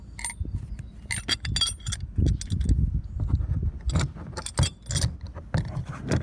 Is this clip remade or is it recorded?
recorded